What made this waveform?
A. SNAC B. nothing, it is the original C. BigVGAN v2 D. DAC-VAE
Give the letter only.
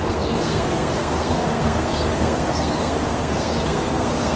A